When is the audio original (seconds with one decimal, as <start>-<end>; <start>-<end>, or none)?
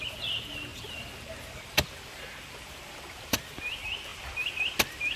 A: 0.0-5.2